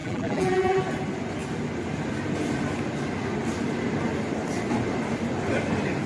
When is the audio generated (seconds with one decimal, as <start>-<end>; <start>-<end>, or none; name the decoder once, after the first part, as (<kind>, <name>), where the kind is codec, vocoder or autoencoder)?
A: 0.0-0.8 (vocoder, BigVGAN v2)